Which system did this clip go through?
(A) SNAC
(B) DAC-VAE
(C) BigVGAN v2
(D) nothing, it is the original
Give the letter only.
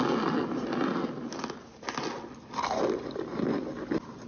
D